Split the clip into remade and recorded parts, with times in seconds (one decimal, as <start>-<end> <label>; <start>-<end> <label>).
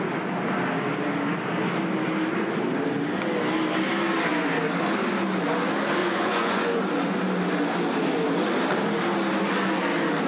0.0-6.0 recorded; 6.0-6.8 remade; 6.8-10.3 recorded